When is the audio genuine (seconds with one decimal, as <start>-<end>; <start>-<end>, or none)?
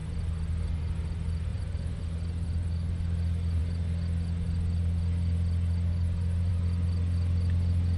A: 0.0-1.5; 2.0-8.0